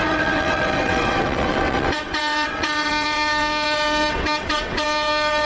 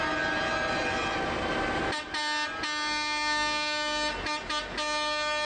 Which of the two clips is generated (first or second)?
first